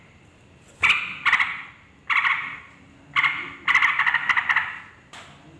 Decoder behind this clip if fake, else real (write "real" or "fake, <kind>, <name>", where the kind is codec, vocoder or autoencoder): real